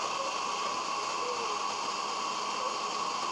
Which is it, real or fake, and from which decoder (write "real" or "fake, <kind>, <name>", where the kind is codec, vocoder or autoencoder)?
real